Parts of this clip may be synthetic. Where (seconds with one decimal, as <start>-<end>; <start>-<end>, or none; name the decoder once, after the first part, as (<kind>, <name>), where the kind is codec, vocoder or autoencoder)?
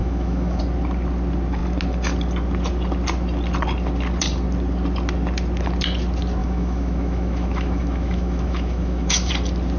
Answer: 0.0-0.6 (autoencoder, DAC-VAE); 6.4-9.3